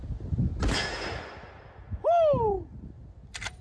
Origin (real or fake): real